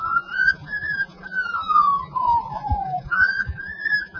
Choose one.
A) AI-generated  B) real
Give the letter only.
A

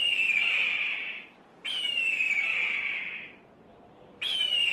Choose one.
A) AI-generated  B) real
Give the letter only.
A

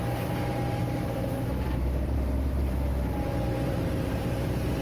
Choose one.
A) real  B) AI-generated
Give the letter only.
B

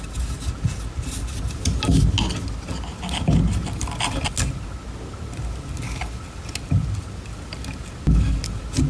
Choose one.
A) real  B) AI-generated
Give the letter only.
A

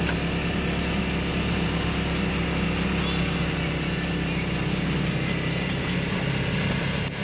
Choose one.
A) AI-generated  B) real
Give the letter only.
B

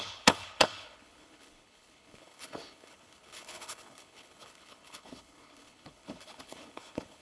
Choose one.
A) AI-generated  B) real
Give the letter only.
A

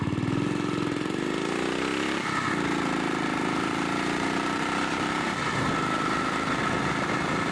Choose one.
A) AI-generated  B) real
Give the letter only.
B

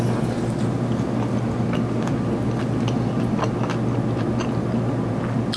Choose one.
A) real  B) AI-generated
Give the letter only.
A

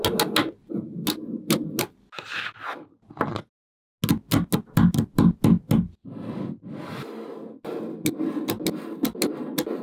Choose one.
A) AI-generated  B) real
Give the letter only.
B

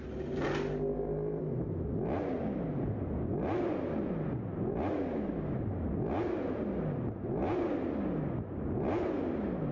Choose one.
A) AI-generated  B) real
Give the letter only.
B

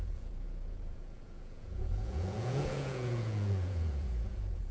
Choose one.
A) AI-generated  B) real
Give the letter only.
A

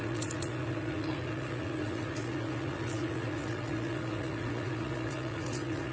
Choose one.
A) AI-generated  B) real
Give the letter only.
A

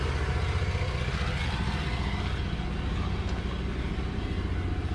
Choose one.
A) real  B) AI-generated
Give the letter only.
A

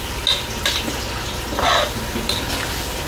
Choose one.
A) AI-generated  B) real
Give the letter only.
B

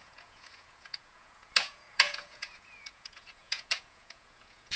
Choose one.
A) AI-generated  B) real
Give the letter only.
A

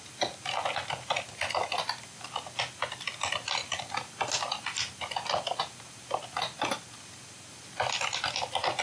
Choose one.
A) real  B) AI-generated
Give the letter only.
A